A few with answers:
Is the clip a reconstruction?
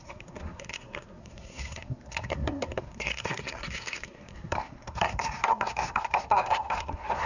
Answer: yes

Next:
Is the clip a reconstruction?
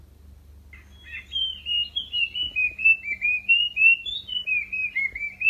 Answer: no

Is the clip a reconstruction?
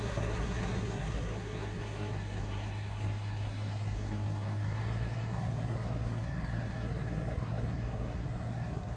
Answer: yes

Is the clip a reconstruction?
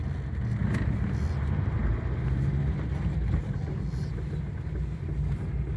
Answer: no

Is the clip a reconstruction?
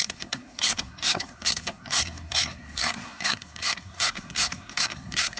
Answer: yes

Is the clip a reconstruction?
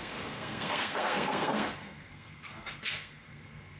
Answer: yes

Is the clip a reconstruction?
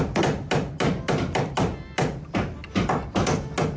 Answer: no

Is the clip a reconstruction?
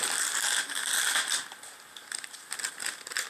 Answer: no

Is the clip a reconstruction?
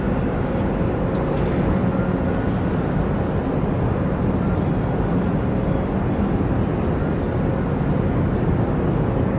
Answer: no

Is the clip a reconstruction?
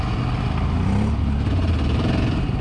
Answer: no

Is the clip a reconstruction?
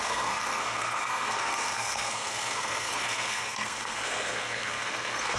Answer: yes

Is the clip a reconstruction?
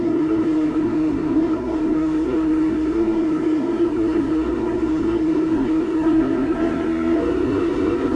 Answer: yes